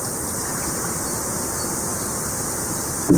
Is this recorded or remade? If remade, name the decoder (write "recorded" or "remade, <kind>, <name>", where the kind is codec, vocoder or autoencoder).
recorded